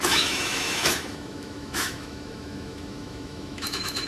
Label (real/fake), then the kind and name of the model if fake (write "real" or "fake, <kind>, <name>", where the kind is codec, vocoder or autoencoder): fake, autoencoder, DAC-VAE